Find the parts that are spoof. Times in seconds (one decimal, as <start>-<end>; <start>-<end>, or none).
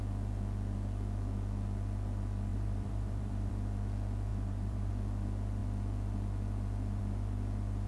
2.5-3.5; 4.3-4.9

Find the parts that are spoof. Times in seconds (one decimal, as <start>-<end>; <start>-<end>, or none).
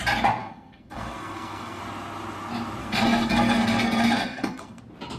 0.4-1.8; 2.8-4.8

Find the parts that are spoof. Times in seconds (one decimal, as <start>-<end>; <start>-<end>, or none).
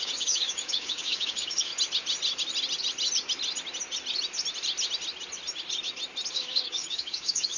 0.0-1.7; 6.3-7.6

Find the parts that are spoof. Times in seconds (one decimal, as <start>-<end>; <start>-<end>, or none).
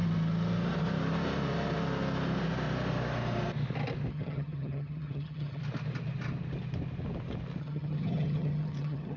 4.1-5.6; 7.6-9.2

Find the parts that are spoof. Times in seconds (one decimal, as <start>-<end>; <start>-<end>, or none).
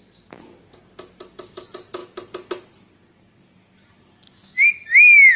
none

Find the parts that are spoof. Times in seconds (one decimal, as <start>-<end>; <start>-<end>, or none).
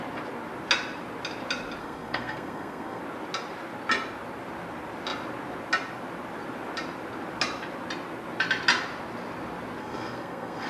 1.8-3.0; 9.8-10.7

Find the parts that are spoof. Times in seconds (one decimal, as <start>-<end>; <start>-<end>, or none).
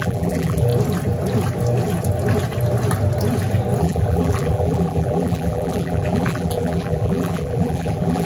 0.0-0.7; 3.8-8.3